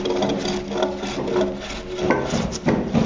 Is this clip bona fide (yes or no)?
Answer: yes